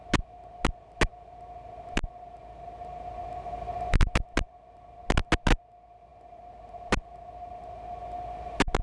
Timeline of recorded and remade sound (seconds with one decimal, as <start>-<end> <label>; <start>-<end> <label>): 0.0-8.8 recorded

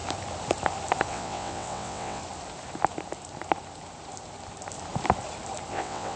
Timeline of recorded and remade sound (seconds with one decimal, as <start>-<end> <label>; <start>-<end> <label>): 0.0-1.1 recorded; 1.1-2.2 remade; 2.2-5.7 recorded; 5.7-6.2 remade

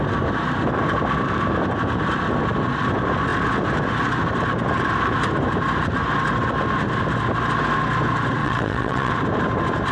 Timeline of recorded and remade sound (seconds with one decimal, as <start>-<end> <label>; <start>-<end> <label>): 0.0-8.4 recorded; 8.4-9.1 remade; 9.1-9.9 recorded

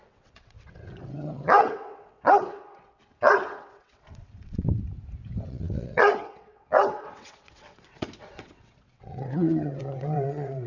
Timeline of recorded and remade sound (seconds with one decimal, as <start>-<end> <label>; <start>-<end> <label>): 0.0-4.8 remade; 4.8-5.5 recorded; 5.5-10.7 remade

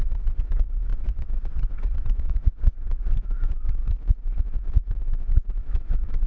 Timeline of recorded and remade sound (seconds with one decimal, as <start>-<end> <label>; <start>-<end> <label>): 0.0-3.8 remade; 3.8-5.6 recorded; 5.6-6.3 remade

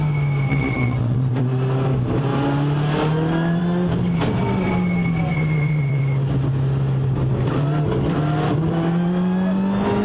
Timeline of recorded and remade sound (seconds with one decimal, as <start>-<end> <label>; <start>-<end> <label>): 0.0-0.5 recorded; 0.5-1.3 remade; 1.3-5.3 recorded; 5.3-6.0 remade; 6.0-10.0 recorded

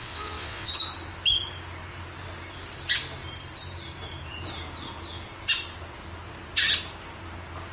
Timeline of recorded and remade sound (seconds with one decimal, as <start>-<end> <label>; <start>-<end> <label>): 0.0-0.7 remade; 0.7-7.7 recorded